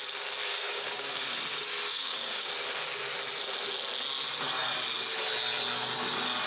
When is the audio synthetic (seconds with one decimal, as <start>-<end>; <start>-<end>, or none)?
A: 0.5-1.2; 1.9-2.5